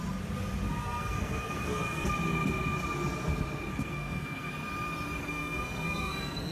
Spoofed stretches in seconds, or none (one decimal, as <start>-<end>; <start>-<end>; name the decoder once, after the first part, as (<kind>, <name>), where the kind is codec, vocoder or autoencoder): 0.8-2.1 (codec, SNAC); 3.7-4.5; 5.2-6.5